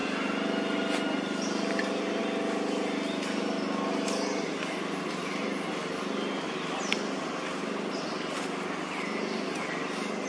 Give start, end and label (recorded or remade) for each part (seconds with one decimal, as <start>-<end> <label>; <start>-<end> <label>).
0.0-10.3 recorded